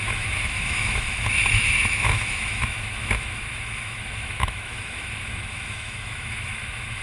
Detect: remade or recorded remade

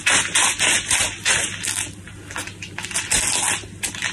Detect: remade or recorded recorded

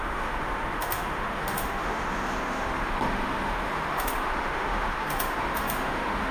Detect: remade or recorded remade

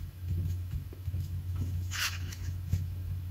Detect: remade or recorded remade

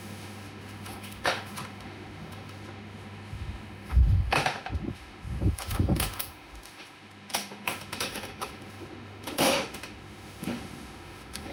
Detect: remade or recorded remade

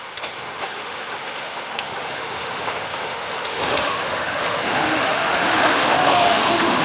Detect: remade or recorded remade